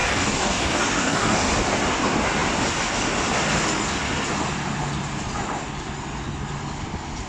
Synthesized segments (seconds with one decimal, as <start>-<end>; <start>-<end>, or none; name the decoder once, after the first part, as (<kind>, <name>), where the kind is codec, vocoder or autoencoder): 0.0-1.5 (codec, DAC)

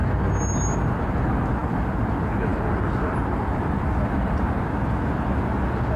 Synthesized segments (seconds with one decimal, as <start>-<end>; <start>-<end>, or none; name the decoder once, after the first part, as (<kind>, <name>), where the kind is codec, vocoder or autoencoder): 2.5-4.6 (vocoder, BigVGAN v2)